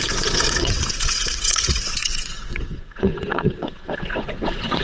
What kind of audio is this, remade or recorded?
remade